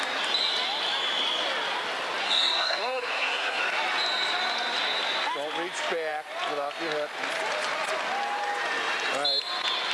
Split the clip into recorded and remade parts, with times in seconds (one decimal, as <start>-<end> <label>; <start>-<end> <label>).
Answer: 0.0-2.2 recorded; 2.2-3.6 remade; 3.6-9.9 recorded